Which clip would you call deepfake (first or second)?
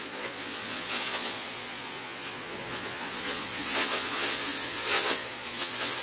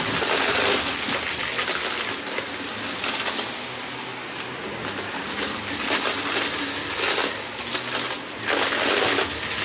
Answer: first